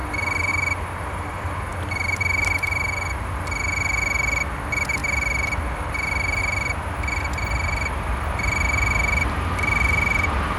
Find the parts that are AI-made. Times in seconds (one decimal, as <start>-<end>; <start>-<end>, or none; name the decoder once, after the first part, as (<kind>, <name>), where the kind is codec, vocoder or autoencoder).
none